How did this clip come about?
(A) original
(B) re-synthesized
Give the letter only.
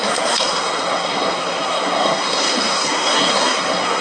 B